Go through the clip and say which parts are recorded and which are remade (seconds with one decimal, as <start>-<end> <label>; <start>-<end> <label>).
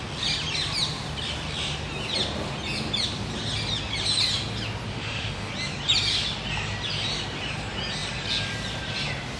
0.0-4.9 recorded; 4.9-5.5 remade; 5.5-9.4 recorded